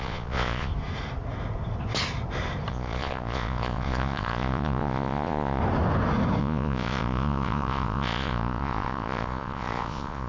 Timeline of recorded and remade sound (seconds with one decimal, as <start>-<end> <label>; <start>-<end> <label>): 0.0-0.7 remade; 0.7-2.7 recorded; 2.7-5.6 remade; 5.6-6.4 recorded; 6.4-10.3 remade